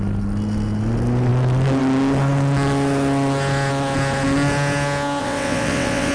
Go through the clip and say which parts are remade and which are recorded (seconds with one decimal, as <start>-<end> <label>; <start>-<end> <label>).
0.0-5.2 recorded; 5.2-6.1 remade

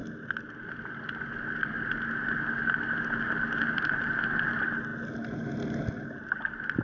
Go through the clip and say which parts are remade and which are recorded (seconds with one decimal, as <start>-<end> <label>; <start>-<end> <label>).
0.0-6.8 recorded

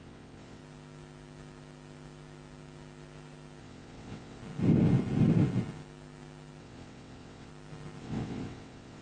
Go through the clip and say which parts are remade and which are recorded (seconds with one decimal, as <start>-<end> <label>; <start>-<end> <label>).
0.0-0.6 remade; 0.6-3.6 recorded; 3.6-4.4 remade; 4.4-6.6 recorded; 6.6-7.5 remade; 7.5-8.0 recorded; 8.0-9.0 remade